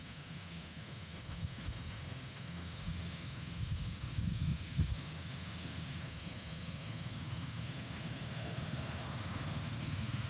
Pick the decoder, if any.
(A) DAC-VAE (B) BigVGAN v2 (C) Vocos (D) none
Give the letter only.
A